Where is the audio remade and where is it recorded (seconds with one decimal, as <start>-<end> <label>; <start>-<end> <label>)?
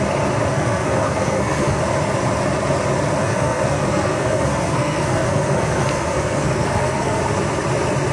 0.0-0.5 recorded; 0.5-1.8 remade; 1.8-3.2 recorded; 3.2-7.2 remade; 7.2-8.1 recorded